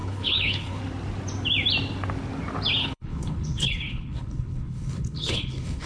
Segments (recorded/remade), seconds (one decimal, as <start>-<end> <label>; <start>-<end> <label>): 0.0-0.8 remade; 0.8-2.8 recorded; 2.8-5.9 remade